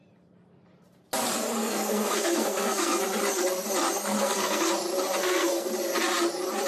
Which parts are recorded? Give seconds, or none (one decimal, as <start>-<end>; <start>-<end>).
0.0-1.6; 3.0-4.2; 4.7-5.2; 5.7-6.7